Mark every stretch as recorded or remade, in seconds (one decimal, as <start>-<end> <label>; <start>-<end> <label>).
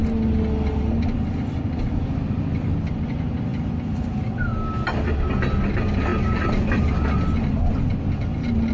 0.0-8.7 recorded